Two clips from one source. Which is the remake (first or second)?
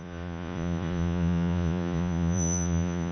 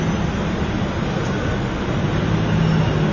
first